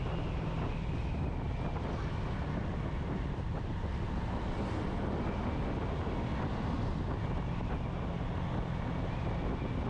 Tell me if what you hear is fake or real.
real